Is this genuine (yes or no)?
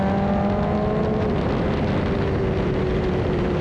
yes